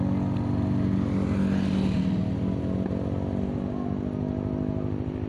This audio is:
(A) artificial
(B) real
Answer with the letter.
B